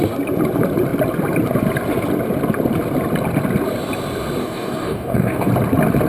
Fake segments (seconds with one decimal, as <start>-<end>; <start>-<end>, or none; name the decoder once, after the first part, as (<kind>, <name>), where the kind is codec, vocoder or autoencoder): 4.4-5.5 (codec, DAC)